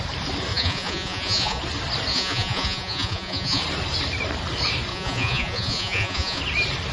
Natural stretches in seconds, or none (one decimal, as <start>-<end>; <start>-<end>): 0.0-0.5; 1.6-2.1; 3.6-4.9; 6.4-6.9

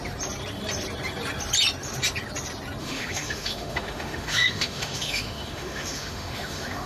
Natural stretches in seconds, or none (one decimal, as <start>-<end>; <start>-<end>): 0.0-2.8

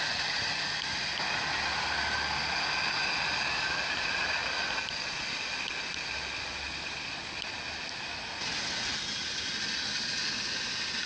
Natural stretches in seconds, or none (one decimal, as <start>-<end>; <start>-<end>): 0.0-11.1

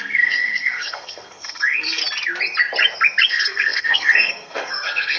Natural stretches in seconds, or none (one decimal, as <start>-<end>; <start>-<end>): 2.0-3.3

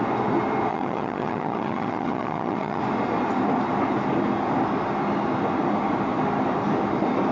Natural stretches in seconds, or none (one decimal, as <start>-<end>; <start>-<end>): 0.0-0.7; 2.8-7.3

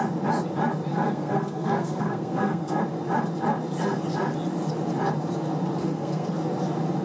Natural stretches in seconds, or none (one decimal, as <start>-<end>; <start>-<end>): 0.0-0.9; 2.8-5.8; 6.3-7.0

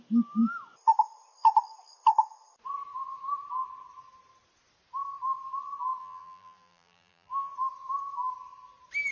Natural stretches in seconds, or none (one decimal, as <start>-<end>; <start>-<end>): 0.0-6.0; 7.5-9.1

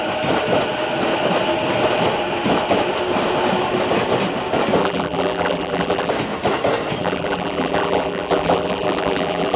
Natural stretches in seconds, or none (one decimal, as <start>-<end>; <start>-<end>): 0.0-4.8; 6.1-7.0